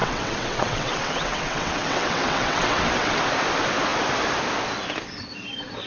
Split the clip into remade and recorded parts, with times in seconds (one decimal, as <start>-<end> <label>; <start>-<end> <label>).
0.0-3.2 remade; 3.2-5.9 recorded